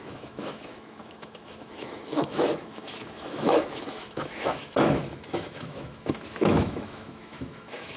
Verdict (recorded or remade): remade